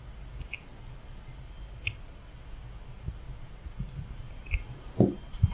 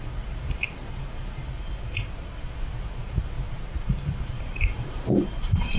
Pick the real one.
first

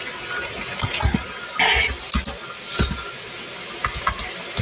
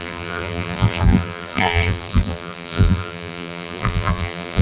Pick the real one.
first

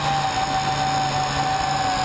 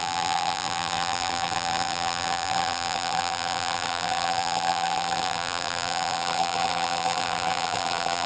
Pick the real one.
first